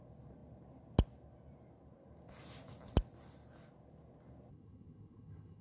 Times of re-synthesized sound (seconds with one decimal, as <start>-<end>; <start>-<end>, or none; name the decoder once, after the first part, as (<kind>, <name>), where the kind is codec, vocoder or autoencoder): 4.5-5.6 (vocoder, HiFi-GAN)